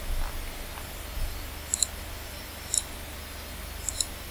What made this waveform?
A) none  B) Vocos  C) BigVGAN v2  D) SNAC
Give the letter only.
A